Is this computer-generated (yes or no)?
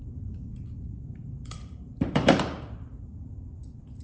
yes